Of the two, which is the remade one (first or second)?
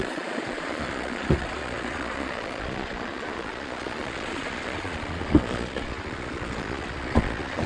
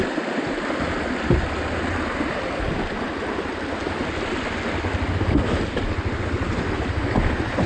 first